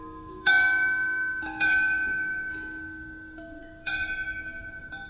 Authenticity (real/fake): fake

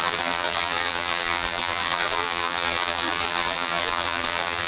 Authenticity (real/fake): fake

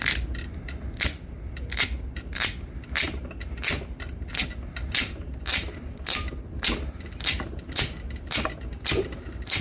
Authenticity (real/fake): real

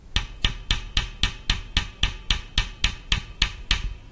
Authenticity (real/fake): real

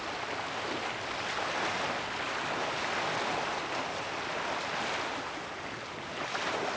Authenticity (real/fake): real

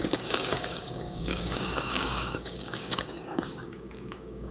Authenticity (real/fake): fake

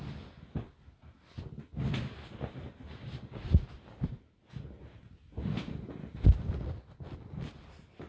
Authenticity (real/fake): real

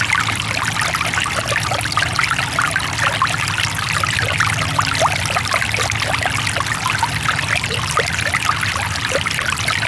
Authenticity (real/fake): real